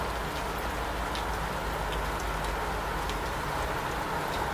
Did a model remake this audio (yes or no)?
no